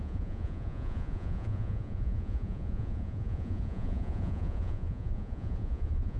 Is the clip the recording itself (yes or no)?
no